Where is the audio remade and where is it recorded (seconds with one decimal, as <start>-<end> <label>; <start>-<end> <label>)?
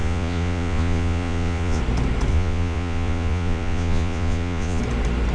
0.0-1.8 remade; 1.8-2.3 recorded; 2.3-4.8 remade; 4.8-5.3 recorded